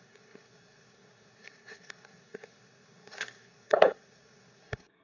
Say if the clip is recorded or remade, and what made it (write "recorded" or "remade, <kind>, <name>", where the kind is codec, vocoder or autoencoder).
remade, codec, SNAC